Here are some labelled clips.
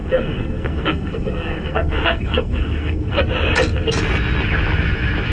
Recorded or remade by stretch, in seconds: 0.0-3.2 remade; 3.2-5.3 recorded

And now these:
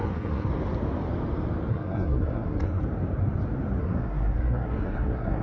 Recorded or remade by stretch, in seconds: 0.0-0.5 remade; 0.5-1.7 recorded; 1.7-2.8 remade; 2.8-3.8 recorded; 3.8-5.4 remade